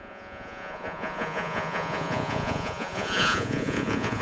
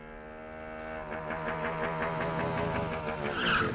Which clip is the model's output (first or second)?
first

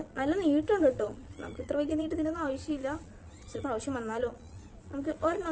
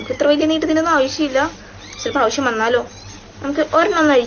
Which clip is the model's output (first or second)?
first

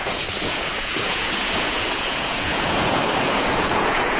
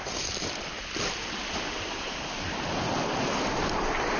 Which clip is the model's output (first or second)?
first